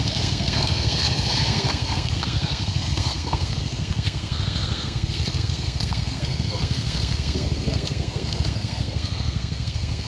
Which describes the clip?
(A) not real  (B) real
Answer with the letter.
A